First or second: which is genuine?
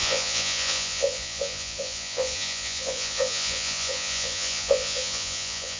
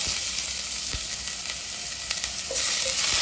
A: second